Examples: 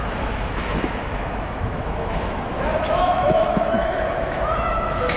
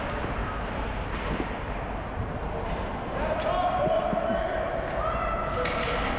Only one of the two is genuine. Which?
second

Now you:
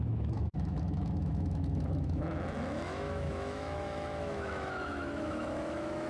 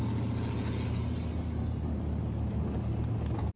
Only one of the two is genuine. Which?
second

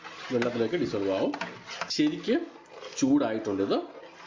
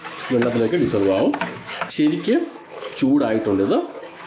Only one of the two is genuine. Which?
first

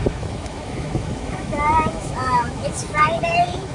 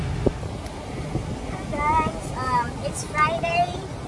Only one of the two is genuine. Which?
second